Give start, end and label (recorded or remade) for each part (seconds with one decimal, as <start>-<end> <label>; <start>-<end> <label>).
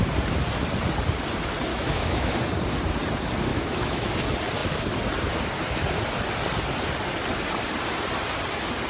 0.0-1.7 recorded; 1.7-2.3 remade; 2.3-3.5 recorded; 3.5-4.1 remade; 4.1-8.9 recorded